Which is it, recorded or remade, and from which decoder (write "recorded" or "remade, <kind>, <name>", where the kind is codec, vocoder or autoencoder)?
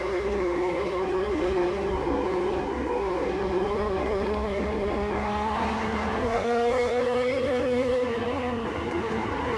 remade, codec, SNAC